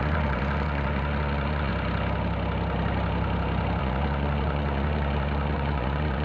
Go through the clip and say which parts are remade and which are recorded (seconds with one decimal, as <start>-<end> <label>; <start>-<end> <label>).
0.0-1.7 remade; 1.7-3.8 recorded; 3.8-6.2 remade